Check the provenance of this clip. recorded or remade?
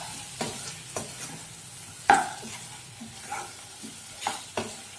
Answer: recorded